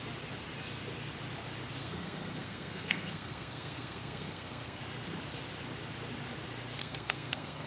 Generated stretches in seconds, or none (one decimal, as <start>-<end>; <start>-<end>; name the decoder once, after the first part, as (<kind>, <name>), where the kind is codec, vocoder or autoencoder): 1.8-4.8 (codec, SNAC); 6.8-7.7